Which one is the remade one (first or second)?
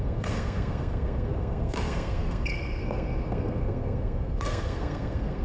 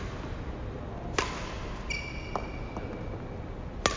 first